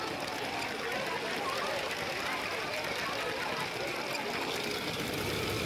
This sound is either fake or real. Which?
real